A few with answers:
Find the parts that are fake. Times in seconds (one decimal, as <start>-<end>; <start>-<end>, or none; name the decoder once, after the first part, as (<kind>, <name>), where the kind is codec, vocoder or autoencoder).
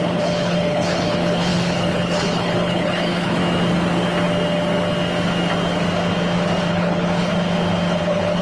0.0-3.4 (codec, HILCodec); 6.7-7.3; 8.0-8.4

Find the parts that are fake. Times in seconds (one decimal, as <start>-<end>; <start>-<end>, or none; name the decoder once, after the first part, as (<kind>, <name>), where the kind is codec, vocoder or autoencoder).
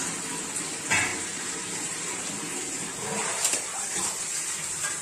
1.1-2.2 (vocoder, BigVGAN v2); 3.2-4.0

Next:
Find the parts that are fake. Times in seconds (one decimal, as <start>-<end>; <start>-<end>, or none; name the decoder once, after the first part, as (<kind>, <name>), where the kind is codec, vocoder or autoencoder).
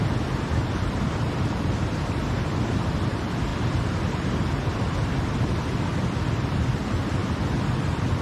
none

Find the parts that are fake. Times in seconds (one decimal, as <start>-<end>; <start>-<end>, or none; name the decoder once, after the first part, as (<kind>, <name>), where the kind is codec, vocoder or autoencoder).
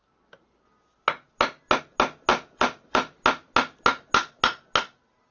2.3-3.2 (vocoder, BigVGAN v2)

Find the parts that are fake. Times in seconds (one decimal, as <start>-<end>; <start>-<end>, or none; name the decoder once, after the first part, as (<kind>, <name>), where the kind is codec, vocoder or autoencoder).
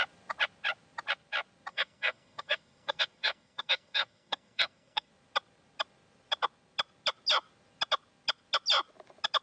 1.7-5.1 (codec, SNAC)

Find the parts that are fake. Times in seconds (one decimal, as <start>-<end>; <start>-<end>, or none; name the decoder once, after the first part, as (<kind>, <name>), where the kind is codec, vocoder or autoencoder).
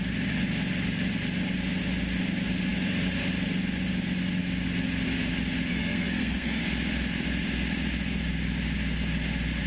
5.7-6.6 (codec, SNAC)